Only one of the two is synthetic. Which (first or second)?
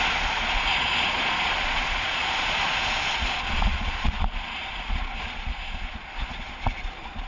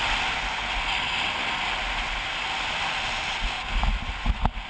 first